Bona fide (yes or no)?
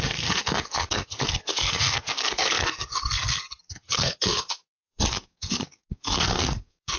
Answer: no